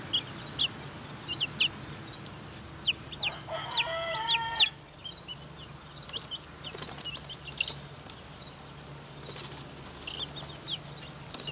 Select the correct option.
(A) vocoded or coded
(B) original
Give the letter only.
B